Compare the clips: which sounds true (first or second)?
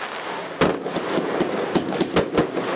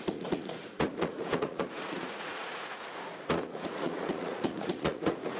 first